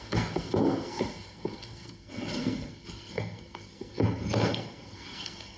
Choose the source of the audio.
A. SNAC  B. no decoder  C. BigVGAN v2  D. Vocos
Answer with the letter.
A